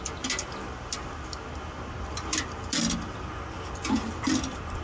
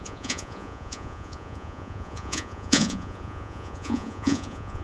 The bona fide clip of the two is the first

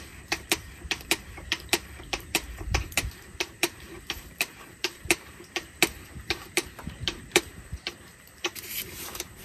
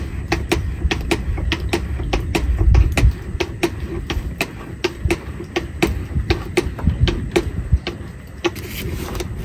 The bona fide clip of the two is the second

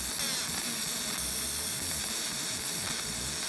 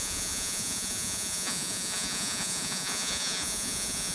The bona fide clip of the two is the first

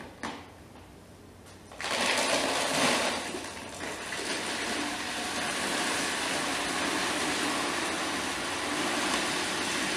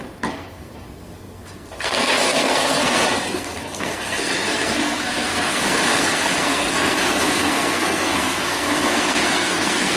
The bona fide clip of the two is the first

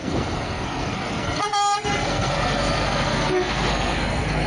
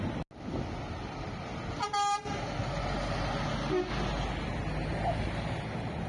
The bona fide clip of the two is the second